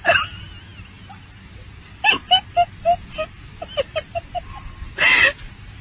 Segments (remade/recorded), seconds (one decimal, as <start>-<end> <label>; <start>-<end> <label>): 0.0-5.8 recorded